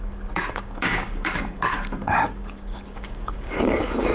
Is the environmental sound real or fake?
fake